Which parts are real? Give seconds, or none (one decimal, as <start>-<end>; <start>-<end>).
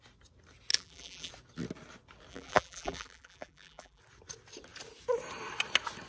0.0-0.7; 1.3-2.3; 4.0-6.1